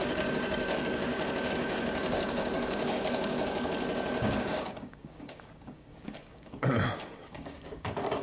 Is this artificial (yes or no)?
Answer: yes